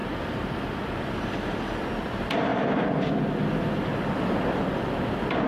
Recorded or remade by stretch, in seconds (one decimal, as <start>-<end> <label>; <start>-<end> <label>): 0.0-1.0 remade; 1.0-2.5 recorded; 2.5-3.0 remade; 3.0-5.5 recorded